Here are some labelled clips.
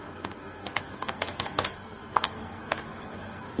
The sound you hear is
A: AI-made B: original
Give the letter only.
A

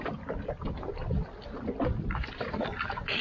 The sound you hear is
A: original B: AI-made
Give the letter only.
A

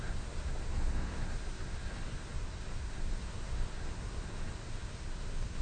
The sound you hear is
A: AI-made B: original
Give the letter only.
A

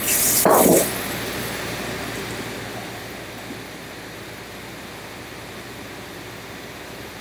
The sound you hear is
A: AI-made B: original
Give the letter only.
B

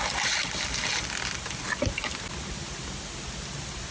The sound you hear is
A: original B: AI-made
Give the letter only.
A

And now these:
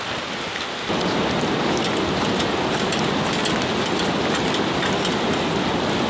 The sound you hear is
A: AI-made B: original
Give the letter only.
B